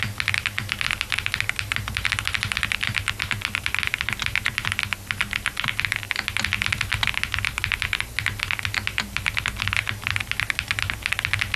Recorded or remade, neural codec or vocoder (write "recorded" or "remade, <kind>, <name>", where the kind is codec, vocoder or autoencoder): recorded